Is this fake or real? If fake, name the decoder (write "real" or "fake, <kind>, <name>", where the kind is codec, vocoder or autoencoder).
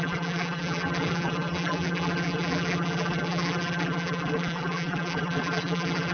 fake, vocoder, BigVGAN v2